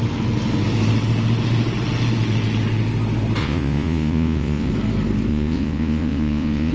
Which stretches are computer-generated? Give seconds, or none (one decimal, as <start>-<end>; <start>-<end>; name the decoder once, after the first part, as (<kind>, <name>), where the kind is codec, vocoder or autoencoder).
3.4-4.7 (vocoder, Vocos); 5.3-6.7